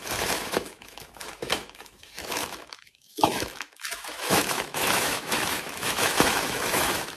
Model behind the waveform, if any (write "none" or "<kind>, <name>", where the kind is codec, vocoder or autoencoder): autoencoder, DAC-VAE